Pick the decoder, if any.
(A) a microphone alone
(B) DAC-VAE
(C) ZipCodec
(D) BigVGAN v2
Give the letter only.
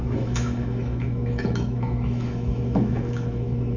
B